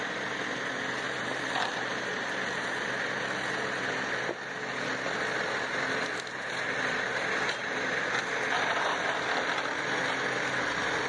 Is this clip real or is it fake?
real